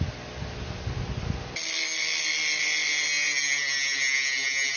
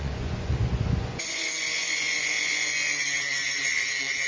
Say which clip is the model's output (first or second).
second